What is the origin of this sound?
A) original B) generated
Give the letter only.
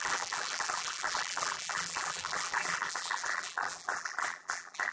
B